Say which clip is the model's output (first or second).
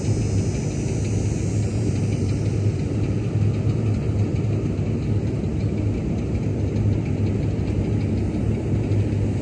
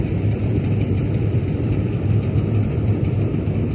second